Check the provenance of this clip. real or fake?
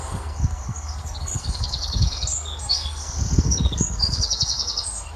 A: fake